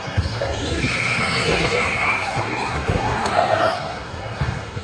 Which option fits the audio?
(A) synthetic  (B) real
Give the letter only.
A